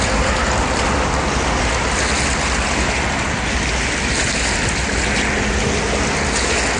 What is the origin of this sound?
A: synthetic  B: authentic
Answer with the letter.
B